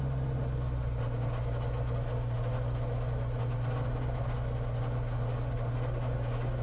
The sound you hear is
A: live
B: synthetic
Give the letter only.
A